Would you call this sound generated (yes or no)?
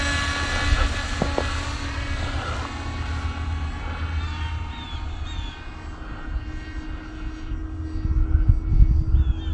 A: no